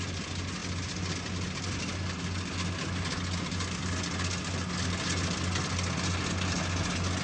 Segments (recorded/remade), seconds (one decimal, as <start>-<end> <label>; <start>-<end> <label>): 0.0-7.2 recorded